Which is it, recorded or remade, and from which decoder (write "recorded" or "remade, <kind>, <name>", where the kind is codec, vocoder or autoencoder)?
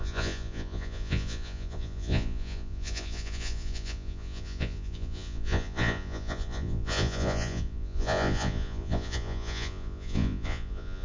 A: remade, vocoder, Vocos